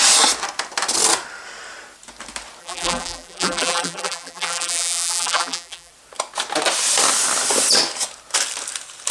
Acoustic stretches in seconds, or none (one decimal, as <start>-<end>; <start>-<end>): 0.0-2.6; 5.9-9.1